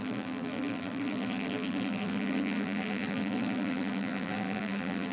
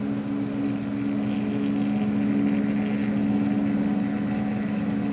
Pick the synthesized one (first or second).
first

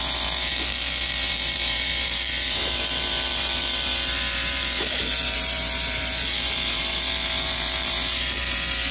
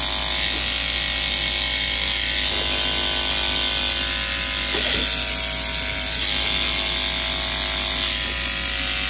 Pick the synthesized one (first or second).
first